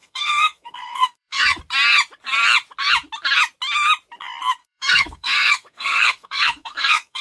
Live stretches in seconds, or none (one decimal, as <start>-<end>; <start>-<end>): 1.6-4.6